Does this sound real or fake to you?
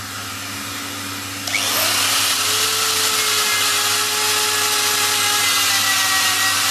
real